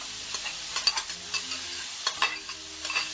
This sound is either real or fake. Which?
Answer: real